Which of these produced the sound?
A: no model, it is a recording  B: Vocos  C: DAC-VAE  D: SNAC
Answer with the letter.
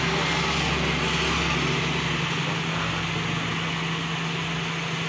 A